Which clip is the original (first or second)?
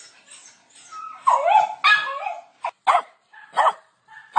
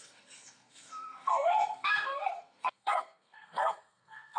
first